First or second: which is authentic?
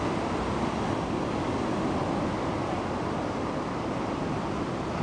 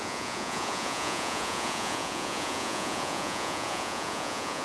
first